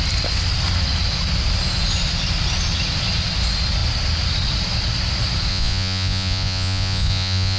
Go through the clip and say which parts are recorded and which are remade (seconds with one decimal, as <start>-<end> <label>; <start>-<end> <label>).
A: 0.0-5.5 recorded; 5.5-7.6 remade